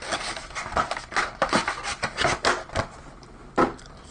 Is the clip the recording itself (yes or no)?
yes